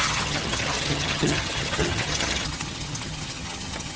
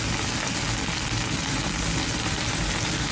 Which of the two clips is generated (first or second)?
first